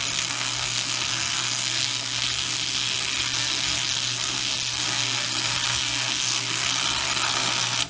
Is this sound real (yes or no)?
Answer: no